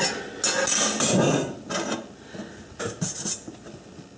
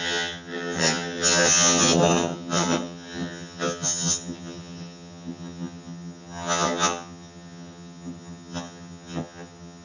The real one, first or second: first